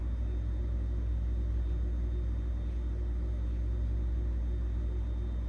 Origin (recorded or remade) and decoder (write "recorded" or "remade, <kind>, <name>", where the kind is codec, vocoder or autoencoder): recorded